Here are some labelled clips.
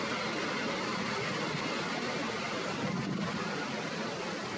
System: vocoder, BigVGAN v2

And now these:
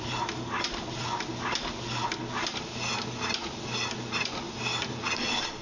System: none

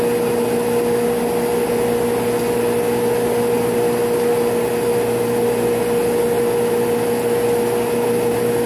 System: none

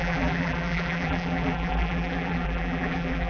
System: vocoder, BigVGAN v2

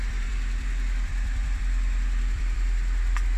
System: vocoder, BigVGAN v2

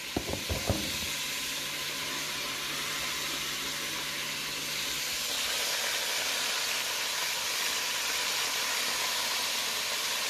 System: none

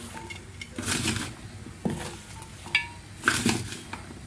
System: none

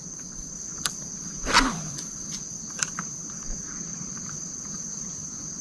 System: vocoder, BigVGAN v2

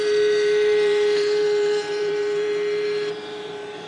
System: vocoder, BigVGAN v2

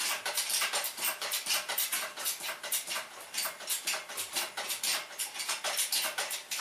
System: vocoder, BigVGAN v2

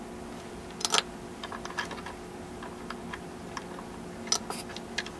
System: none